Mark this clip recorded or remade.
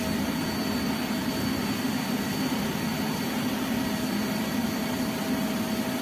recorded